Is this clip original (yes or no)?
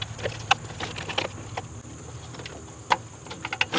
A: yes